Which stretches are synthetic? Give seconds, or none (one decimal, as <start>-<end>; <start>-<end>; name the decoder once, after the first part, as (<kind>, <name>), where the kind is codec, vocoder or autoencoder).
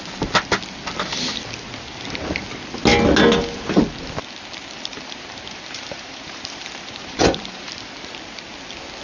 4.9-7.7 (vocoder, BigVGAN v2)